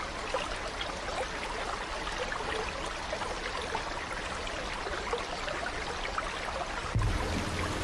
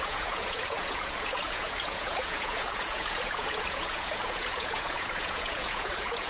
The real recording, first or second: first